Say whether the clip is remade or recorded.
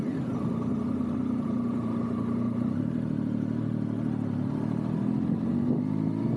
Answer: recorded